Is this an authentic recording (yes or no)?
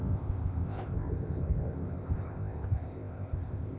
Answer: no